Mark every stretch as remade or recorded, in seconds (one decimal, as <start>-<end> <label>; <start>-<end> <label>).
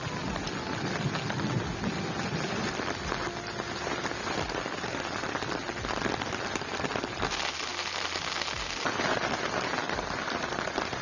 0.0-11.0 recorded